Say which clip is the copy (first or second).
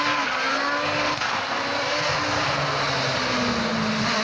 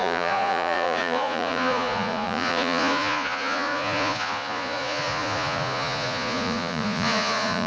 second